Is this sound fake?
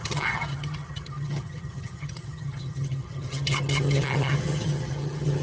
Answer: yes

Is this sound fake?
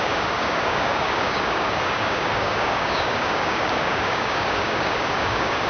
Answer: yes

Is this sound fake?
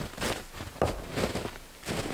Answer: no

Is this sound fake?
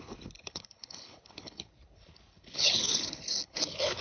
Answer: yes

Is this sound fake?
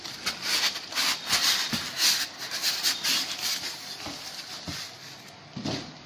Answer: no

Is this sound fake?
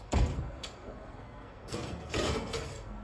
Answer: yes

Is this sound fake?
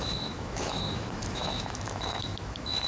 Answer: yes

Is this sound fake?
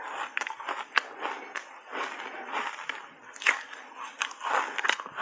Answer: no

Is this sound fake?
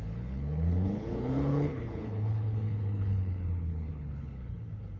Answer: yes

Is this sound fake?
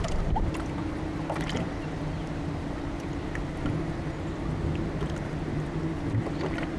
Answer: no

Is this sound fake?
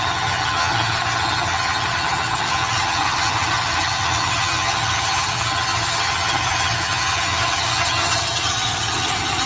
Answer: yes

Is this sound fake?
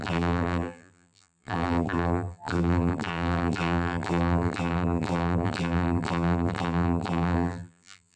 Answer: yes